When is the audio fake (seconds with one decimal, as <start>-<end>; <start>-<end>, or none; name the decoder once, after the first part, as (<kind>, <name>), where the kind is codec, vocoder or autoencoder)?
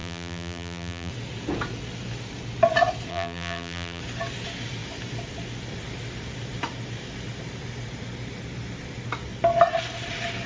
0.0-1.1 (vocoder, BigVGAN v2); 3.1-4.0